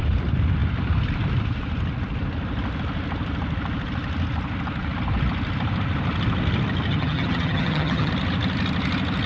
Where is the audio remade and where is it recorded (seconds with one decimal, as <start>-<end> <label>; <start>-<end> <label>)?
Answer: 0.0-6.9 recorded; 6.9-8.1 remade; 8.1-9.3 recorded